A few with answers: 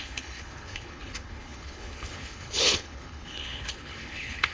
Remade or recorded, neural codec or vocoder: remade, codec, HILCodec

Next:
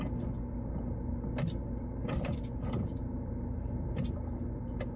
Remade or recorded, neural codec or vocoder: recorded